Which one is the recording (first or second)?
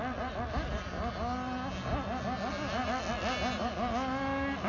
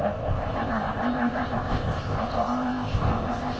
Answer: first